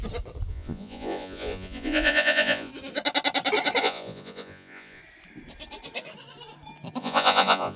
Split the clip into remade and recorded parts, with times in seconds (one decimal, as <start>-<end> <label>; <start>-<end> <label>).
0.0-0.5 recorded; 0.5-2.7 remade; 2.7-3.8 recorded; 3.8-5.0 remade; 5.0-7.0 recorded; 7.0-7.8 remade